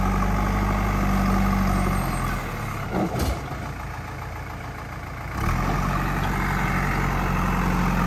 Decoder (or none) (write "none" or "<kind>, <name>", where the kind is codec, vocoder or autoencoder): none